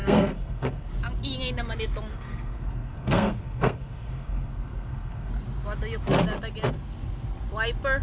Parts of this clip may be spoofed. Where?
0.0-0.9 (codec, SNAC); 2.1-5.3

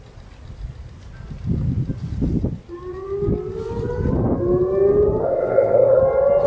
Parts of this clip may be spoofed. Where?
5.2-6.0 (codec, ZipCodec)

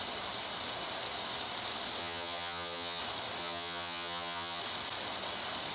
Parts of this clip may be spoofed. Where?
2.0-3.0 (vocoder, HiFi-GAN); 3.4-4.6

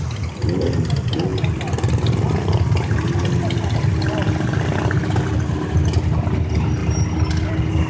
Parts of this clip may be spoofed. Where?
none

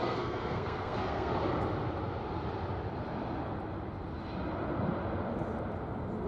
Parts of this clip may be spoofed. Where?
0.0-1.3 (codec, SNAC)

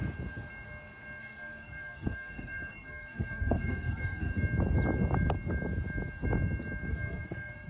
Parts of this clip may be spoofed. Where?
1.2-4.3 (codec, SNAC); 6.9-7.7

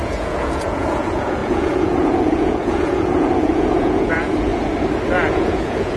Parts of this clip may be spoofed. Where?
0.0-4.5 (vocoder, Vocos); 5.3-6.0

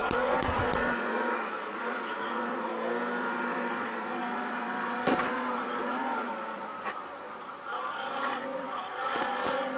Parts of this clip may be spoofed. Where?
0.0-2.7 (vocoder, Vocos); 3.2-9.8